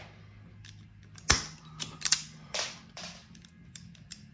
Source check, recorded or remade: recorded